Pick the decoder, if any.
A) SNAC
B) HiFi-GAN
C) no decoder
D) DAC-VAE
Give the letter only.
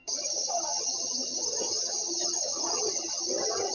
B